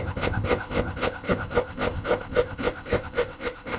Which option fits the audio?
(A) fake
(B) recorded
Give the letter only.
A